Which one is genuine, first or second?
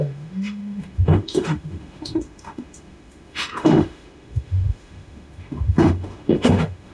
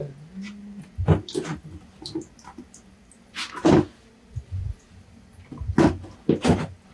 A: second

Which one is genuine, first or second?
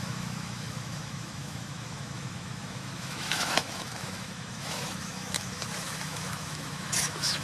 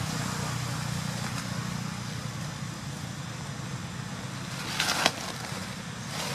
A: second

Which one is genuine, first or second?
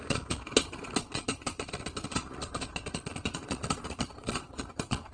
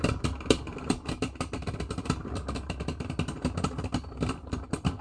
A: second